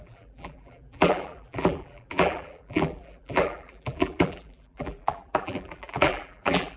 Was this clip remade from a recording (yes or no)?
yes